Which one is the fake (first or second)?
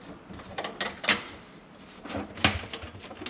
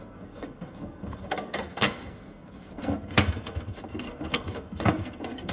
second